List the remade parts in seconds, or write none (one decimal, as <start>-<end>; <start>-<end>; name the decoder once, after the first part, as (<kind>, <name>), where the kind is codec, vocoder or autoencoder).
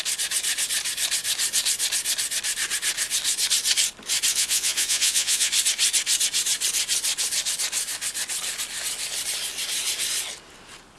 4.3-5.5 (vocoder, Vocos)